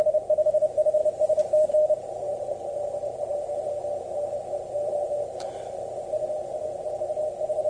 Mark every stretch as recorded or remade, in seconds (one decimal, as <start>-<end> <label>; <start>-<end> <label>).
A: 0.0-1.0 recorded; 1.0-1.7 remade; 1.7-7.7 recorded